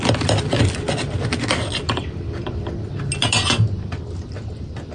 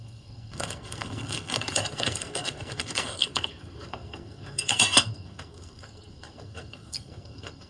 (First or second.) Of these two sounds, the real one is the first